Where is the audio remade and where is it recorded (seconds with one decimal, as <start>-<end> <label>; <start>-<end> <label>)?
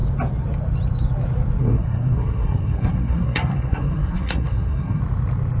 0.0-1.6 recorded; 1.6-5.0 remade; 5.0-5.6 recorded